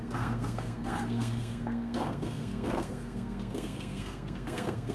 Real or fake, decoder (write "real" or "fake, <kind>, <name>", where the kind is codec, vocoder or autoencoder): fake, codec, SNAC